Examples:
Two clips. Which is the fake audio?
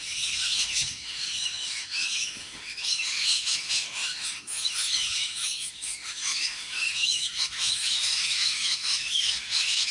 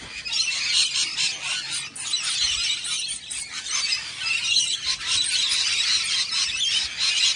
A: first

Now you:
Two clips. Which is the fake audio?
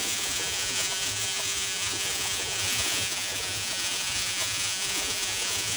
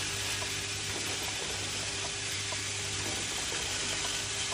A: first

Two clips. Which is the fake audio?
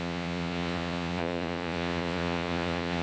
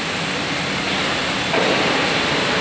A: first